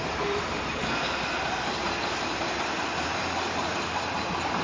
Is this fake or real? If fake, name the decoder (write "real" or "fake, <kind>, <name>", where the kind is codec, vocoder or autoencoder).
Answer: fake, vocoder, BigVGAN v2